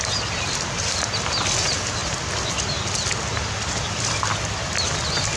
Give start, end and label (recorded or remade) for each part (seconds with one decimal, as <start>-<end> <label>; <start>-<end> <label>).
0.0-5.4 recorded